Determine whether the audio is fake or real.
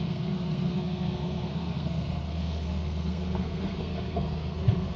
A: fake